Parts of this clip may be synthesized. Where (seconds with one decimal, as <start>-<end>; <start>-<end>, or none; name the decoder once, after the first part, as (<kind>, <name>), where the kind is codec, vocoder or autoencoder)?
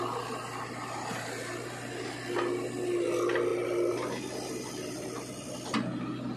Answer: none